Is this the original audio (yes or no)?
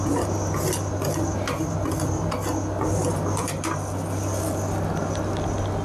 yes